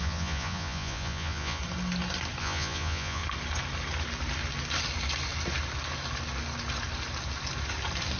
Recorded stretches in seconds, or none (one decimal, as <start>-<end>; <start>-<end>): 1.6-2.4; 3.2-8.2

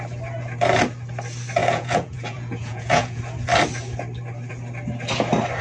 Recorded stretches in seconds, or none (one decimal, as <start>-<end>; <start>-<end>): 0.0-1.6; 3.2-5.6